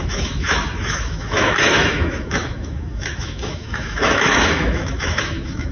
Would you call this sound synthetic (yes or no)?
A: yes